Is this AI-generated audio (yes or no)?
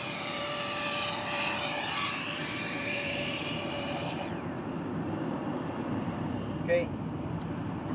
yes